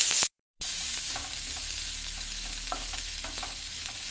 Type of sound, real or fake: fake